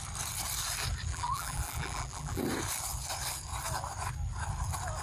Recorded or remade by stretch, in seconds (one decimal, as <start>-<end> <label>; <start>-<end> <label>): 0.0-1.1 recorded; 1.1-2.4 remade; 2.4-5.0 recorded